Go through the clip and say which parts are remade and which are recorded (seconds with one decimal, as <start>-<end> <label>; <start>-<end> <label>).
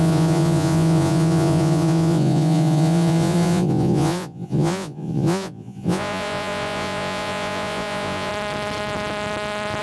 0.0-8.3 remade; 8.3-9.8 recorded